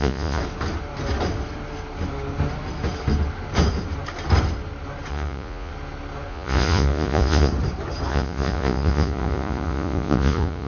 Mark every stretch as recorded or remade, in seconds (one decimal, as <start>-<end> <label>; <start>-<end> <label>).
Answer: 0.0-0.4 remade; 0.4-5.1 recorded; 5.1-5.7 remade; 5.7-6.3 recorded; 6.3-7.5 remade; 7.5-8.1 recorded; 8.1-10.7 remade